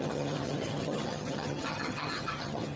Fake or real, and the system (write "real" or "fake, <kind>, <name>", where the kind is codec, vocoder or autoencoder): fake, vocoder, HiFi-GAN